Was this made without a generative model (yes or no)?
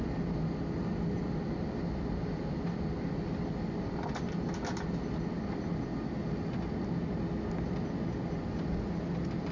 yes